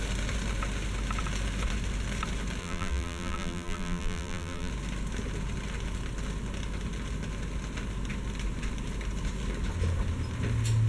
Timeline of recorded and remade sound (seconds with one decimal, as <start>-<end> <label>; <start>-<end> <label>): 0.0-2.6 recorded; 2.6-4.7 remade; 4.7-10.9 recorded